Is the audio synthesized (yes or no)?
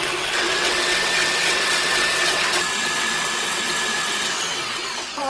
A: yes